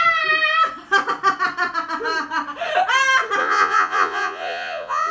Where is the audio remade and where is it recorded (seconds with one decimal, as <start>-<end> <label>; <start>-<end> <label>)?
0.0-3.4 recorded; 3.4-5.1 remade